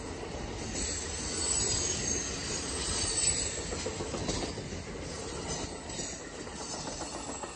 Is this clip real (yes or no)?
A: yes